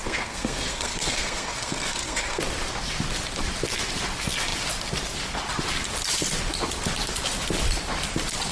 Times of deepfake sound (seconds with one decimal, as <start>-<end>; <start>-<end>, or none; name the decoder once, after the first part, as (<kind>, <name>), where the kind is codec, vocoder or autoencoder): 0.0-2.4 (codec, SNAC)